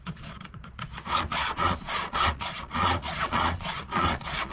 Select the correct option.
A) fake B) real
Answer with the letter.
A